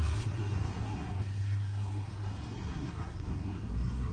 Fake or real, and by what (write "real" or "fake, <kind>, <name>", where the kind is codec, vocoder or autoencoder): fake, codec, SNAC